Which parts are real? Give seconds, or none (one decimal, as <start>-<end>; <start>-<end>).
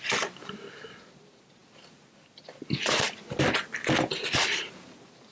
0.0-5.3